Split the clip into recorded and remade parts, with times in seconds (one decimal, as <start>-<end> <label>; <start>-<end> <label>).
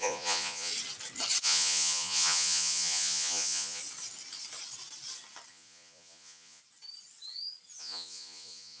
0.0-0.7 remade; 0.7-1.4 recorded; 1.4-3.8 remade; 3.8-5.5 recorded; 5.5-6.6 remade; 6.6-7.8 recorded; 7.8-8.8 remade